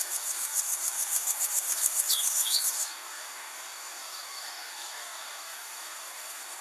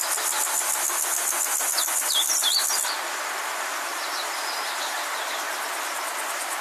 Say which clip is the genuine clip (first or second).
second